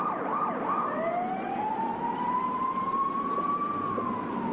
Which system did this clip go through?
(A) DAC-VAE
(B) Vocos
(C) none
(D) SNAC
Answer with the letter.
C